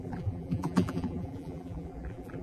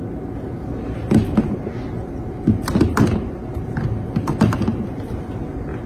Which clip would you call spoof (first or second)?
first